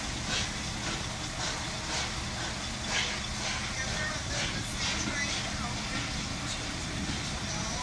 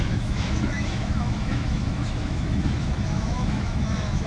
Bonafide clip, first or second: first